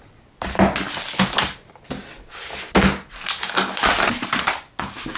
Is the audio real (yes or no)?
yes